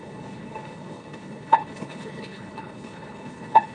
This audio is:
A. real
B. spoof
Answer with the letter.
B